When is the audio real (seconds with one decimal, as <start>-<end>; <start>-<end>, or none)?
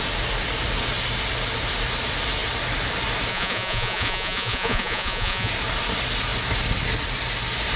0.0-3.3; 5.5-7.8